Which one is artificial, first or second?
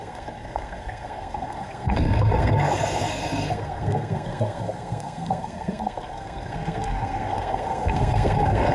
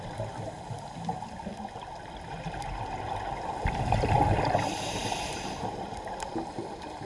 first